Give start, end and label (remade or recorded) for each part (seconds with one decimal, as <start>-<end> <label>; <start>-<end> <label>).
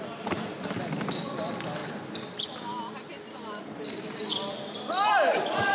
0.0-5.7 remade